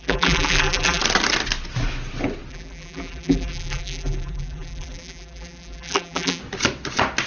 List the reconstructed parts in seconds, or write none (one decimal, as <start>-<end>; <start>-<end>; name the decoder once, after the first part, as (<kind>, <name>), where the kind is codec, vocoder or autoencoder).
0.0-1.0 (vocoder, BigVGAN v2); 2.5-6.4